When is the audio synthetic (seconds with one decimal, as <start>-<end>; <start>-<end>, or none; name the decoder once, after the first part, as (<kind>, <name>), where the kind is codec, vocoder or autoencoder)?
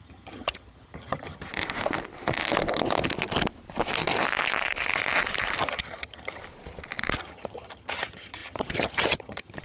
0.0-1.5 (vocoder, HiFi-GAN); 5.6-6.4; 7.2-9.6